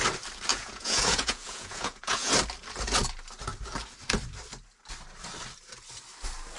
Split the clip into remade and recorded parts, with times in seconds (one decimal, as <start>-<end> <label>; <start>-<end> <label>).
0.0-0.5 recorded; 0.5-2.3 remade; 2.3-6.6 recorded